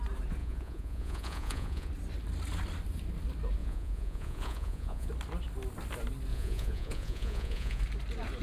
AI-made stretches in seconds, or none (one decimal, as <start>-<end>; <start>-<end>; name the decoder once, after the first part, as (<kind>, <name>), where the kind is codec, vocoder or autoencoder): 0.4-1.9 (vocoder, Vocos); 3.6-5.1; 6.3-7.8